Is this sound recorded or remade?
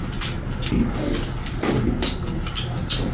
recorded